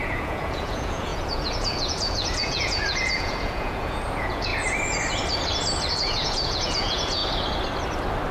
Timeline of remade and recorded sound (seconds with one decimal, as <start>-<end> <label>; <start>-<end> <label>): 0.0-4.5 remade; 4.5-5.9 recorded; 5.9-7.2 remade; 7.2-8.3 recorded